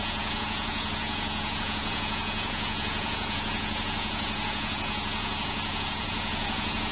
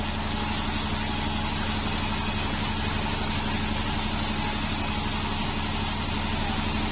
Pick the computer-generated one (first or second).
first